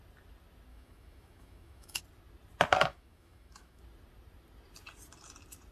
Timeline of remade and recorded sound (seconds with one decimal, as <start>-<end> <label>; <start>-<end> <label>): 0.0-0.7 recorded; 0.7-2.0 remade; 2.0-2.9 recorded; 2.9-3.8 remade; 3.8-5.7 recorded